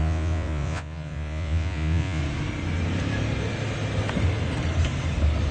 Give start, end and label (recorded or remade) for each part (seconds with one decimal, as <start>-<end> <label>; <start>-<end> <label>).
0.0-2.2 remade; 2.2-5.5 recorded